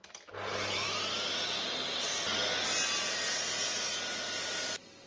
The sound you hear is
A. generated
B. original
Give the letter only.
B